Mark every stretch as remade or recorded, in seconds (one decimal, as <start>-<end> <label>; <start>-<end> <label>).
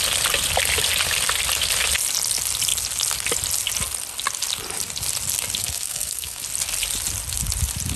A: 0.0-5.6 recorded; 5.6-6.4 remade; 6.4-8.0 recorded